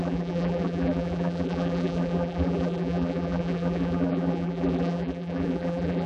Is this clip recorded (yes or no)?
no